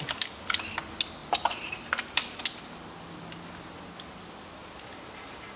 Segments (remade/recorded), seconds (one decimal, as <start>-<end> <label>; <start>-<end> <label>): 0.0-5.6 recorded